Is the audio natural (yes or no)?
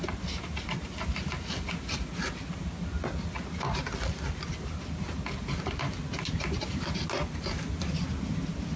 yes